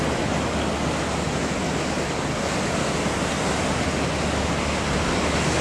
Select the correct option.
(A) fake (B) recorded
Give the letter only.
B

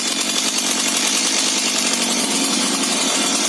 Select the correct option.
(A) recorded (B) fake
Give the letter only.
B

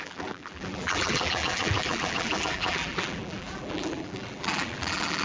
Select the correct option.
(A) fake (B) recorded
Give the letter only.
A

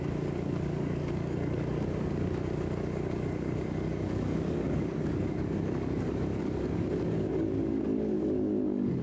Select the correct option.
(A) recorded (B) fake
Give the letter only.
B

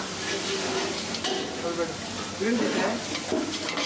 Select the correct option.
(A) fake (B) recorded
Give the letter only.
B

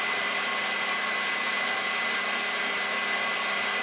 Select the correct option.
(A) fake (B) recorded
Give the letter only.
B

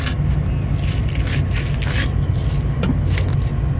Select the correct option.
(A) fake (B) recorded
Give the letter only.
B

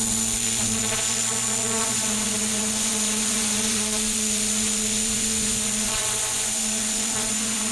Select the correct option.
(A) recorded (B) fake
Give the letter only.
B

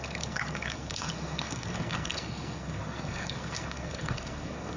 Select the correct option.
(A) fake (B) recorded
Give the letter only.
A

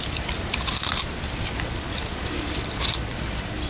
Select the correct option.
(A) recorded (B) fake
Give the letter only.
A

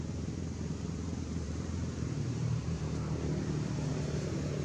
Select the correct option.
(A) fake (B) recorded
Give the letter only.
A